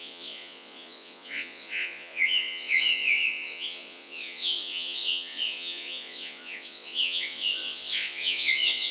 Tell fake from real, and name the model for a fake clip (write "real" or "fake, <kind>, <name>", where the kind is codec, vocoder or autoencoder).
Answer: fake, vocoder, Vocos